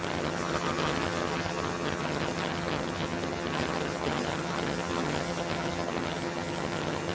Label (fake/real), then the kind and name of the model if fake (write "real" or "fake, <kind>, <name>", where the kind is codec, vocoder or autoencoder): fake, vocoder, HiFi-GAN